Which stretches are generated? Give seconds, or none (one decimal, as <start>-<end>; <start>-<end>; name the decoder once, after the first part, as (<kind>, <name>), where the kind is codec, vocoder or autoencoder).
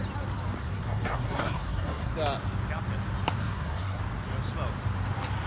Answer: 0.6-2.1 (codec, SNAC); 3.4-4.0